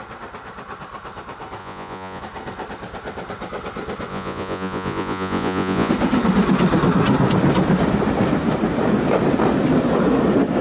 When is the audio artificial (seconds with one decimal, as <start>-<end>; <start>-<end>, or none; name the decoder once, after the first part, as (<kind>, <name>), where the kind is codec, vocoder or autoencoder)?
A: 1.6-2.2 (vocoder, Vocos); 4.1-5.9